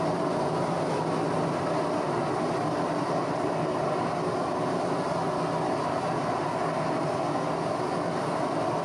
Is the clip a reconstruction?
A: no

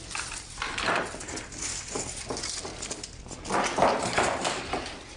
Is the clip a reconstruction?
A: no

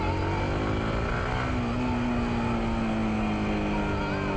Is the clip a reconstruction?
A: no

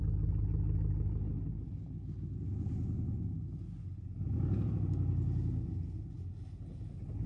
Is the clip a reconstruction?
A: no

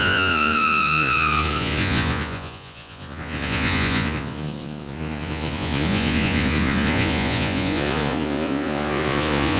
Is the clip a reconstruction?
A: yes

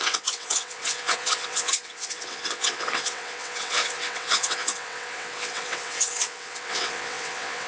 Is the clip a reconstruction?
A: yes